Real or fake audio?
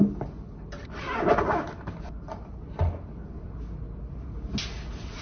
real